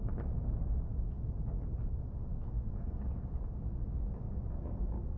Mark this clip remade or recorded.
recorded